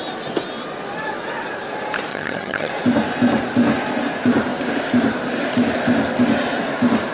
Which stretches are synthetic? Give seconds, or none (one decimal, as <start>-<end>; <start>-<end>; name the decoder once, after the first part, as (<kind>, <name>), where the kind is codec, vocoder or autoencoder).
2.1-2.7 (vocoder, HiFi-GAN)